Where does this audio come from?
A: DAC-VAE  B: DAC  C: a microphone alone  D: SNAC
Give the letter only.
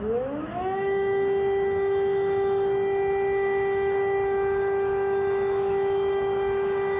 A